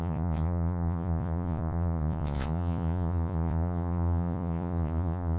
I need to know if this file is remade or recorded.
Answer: remade